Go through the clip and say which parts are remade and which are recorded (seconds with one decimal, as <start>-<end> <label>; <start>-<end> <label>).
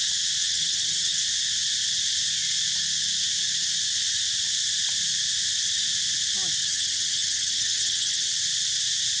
0.0-0.4 recorded; 0.4-1.2 remade; 1.2-6.6 recorded; 6.6-8.3 remade; 8.3-9.2 recorded